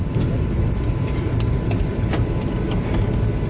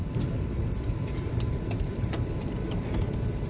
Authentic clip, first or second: first